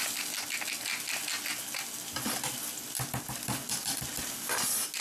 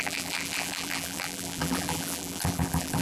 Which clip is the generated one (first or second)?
second